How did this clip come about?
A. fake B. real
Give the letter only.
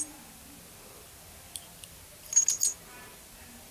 B